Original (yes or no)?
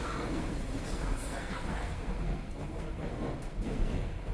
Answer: no